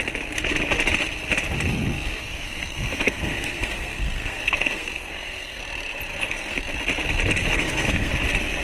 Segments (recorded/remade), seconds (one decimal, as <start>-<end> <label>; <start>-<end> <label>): 0.0-2.2 recorded; 2.2-5.6 remade; 5.6-6.1 recorded; 6.1-6.6 remade; 6.6-7.4 recorded; 7.4-8.1 remade; 8.1-8.6 recorded